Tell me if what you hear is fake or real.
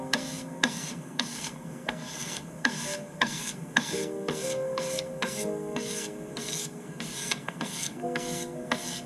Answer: fake